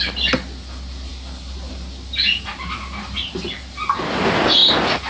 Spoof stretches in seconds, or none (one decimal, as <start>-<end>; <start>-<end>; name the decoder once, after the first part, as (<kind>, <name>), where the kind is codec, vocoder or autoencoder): none